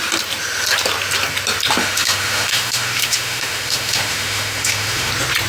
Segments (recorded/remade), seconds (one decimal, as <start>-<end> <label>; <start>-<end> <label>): 0.0-1.8 recorded; 1.8-5.1 remade; 5.1-5.5 recorded